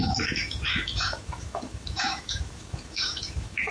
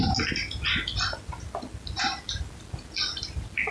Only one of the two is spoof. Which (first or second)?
first